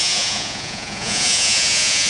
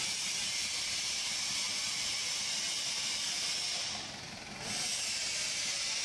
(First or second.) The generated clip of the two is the first